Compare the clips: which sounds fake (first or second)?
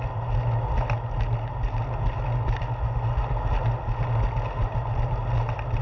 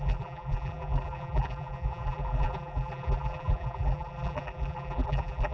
second